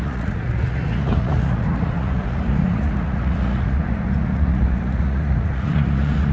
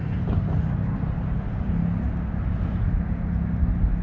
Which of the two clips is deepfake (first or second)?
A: first